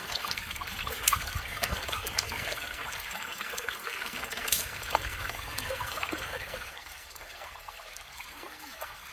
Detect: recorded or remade remade